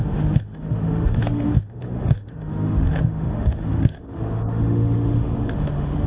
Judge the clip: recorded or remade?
remade